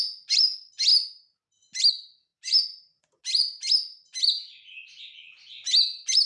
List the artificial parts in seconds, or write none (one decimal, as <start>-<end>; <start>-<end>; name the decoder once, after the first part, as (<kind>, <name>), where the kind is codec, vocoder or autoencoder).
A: none